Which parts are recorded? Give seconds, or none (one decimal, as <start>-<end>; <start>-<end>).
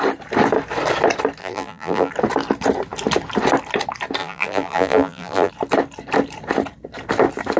0.0-1.4; 2.1-4.2; 5.5-7.6